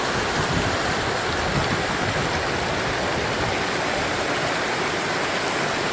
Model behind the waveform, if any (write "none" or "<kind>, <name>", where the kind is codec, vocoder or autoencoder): none